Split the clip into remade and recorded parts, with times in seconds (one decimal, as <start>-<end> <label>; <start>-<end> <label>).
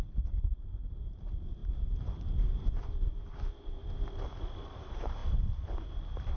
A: 0.0-3.8 remade; 3.8-4.6 recorded; 4.6-6.4 remade